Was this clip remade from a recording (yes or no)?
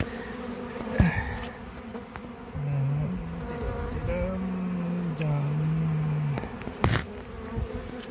no